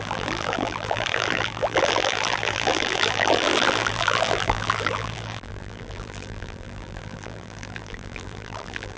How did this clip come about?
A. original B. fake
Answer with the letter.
B